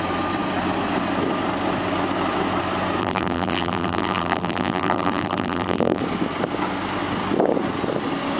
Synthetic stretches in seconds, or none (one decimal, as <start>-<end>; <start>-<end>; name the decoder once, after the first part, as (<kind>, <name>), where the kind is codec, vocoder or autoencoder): 3.0-6.0 (vocoder, BigVGAN v2)

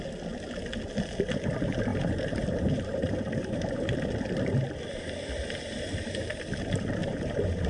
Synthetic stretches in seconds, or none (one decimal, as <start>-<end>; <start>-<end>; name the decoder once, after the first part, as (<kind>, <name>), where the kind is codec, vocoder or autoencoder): 1.9-4.0 (vocoder, BigVGAN v2); 7.0-7.7

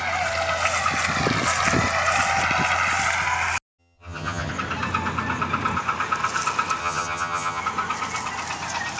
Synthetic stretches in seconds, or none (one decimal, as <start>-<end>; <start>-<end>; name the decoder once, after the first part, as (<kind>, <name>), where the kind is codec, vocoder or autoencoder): 3.8-4.5 (vocoder, HiFi-GAN); 6.8-7.6

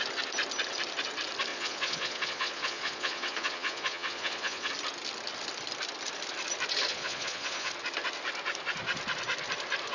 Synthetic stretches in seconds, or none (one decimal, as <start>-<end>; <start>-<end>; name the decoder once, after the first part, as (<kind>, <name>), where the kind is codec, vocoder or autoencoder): 1.5-4.7 (vocoder, Vocos); 6.9-7.7

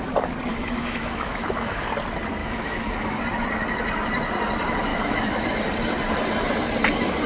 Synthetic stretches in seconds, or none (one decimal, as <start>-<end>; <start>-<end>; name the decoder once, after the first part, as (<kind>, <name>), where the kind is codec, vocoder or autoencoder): 0.5-1.8 (autoencoder, DAC-VAE); 2.4-3.2; 4.9-5.6

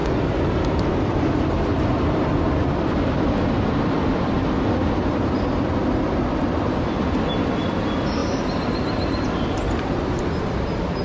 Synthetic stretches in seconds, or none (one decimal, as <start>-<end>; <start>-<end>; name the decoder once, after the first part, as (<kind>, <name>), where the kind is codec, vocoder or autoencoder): none

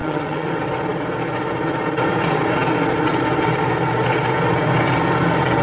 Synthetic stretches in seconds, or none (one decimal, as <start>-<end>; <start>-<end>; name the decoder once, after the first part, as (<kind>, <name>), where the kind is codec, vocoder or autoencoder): 0.0-0.5 (vocoder, WaveNeXt)